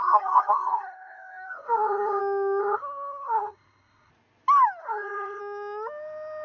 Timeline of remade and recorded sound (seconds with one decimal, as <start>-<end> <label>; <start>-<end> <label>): 0.0-2.2 remade; 2.2-2.6 recorded; 2.6-4.1 remade; 4.1-4.8 recorded; 4.8-5.4 remade; 5.4-6.4 recorded